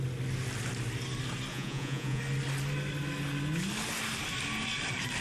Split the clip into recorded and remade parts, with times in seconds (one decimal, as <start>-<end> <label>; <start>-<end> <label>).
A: 0.0-1.5 recorded; 1.5-2.2 remade; 2.2-5.2 recorded